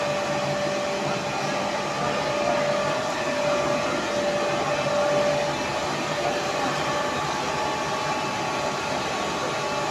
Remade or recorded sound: recorded